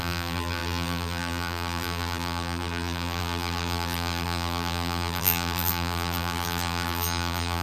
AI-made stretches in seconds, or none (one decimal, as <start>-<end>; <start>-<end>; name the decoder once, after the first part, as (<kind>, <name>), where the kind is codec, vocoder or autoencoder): 0.0-7.6 (vocoder, BigVGAN v2)